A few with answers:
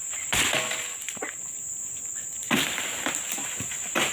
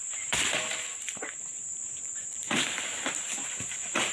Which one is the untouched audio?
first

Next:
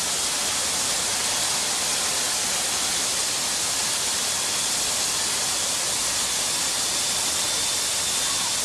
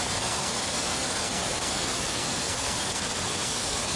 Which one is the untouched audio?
first